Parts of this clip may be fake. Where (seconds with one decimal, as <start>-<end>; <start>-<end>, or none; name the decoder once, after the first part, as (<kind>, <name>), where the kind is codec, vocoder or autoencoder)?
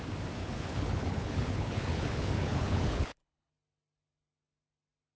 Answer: 0.4-3.5 (codec, HILCodec)